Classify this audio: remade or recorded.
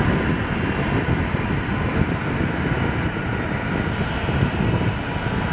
recorded